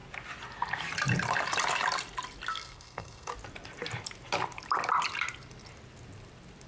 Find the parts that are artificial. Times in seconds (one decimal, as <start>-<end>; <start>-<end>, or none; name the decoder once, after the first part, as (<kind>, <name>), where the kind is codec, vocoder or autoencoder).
2.5-3.3 (codec, SNAC)